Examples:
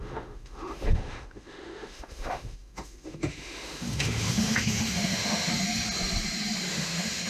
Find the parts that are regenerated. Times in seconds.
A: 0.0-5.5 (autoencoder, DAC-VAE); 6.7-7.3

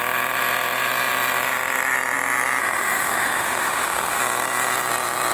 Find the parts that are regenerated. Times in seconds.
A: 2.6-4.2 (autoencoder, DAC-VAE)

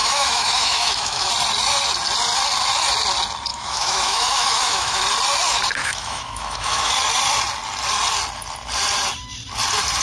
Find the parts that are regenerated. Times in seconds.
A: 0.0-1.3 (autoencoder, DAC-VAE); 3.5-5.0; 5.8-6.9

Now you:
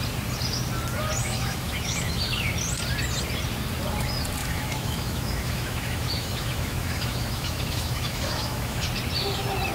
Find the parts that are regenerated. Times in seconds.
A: 1.2-2.5 (autoencoder, DAC-VAE); 4.4-8.8

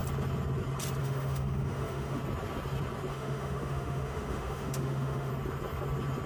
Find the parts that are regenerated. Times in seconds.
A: 1.0-2.2 (autoencoder, DAC-VAE); 3.1-5.3

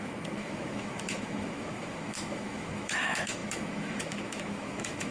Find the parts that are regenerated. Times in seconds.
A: 0.0-5.1 (autoencoder, DAC-VAE)